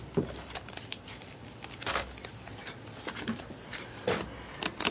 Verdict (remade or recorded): recorded